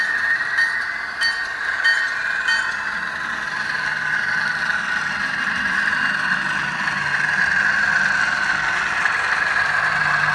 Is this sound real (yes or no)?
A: yes